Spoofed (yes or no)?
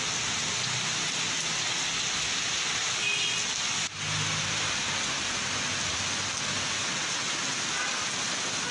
no